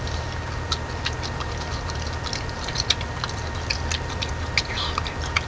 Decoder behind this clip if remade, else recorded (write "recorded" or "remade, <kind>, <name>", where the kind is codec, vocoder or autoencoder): recorded